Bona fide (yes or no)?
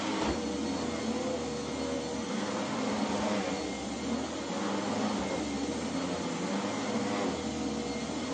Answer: yes